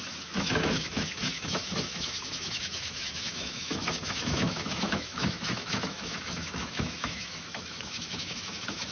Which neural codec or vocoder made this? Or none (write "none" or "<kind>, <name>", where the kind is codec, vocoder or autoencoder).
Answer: autoencoder, DAC-VAE